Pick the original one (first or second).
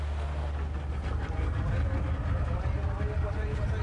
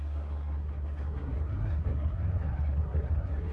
first